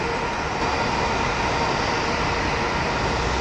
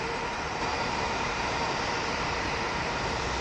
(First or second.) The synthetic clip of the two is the second